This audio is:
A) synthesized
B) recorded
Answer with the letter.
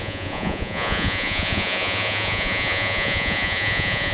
A